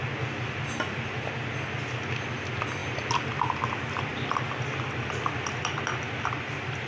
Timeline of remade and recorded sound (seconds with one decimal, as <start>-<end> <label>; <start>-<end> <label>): 0.0-6.9 recorded